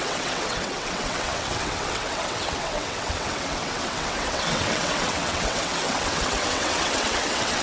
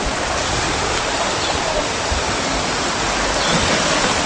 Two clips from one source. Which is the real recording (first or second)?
second